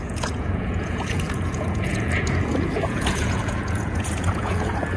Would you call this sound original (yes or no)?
no